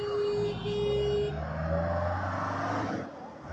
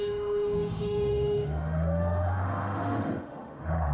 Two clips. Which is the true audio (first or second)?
first